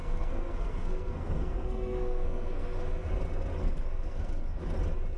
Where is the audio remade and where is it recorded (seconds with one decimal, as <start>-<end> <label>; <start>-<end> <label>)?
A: 0.0-3.1 remade; 3.1-3.6 recorded; 3.6-4.6 remade; 4.6-5.2 recorded